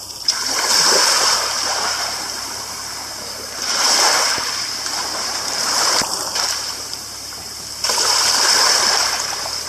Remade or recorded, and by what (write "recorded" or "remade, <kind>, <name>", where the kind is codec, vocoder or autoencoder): remade, vocoder, BigVGAN v2